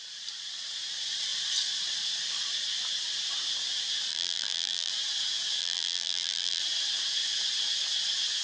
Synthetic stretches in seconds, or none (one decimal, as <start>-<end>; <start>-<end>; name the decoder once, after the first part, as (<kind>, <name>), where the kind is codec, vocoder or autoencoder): 4.1-4.9 (vocoder, BigVGAN v2); 5.6-6.6